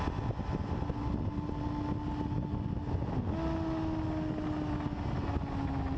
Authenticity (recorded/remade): recorded